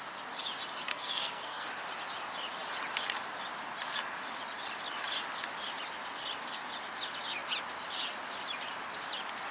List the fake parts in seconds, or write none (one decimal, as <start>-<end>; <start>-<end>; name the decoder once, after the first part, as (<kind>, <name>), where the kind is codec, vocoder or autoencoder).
0.9-1.7 (codec, SNAC)